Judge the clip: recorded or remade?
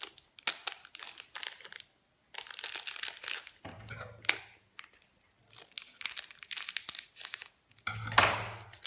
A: recorded